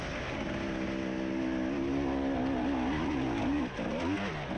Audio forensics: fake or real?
real